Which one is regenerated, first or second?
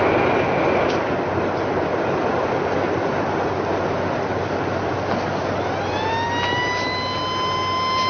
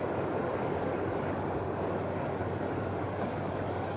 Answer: second